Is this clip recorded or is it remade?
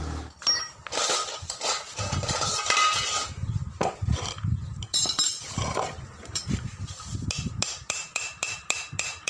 remade